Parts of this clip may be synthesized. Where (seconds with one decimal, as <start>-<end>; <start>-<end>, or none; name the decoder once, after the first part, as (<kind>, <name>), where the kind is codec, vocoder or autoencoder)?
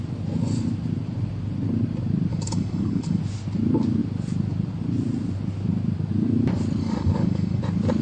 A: 2.3-3.2 (codec, DAC); 6.8-7.6